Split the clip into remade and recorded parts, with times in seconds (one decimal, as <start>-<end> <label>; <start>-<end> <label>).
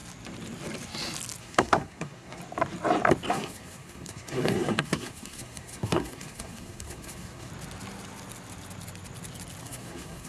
0.0-1.4 recorded; 1.4-2.4 remade; 2.4-3.3 recorded; 3.3-7.5 remade; 7.5-9.6 recorded; 9.6-10.3 remade